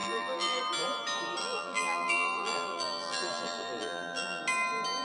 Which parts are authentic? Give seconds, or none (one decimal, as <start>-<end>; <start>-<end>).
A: 0.6-1.4; 4.4-5.0